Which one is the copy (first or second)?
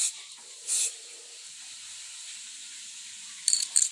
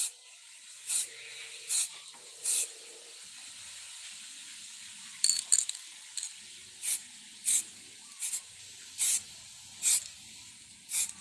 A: first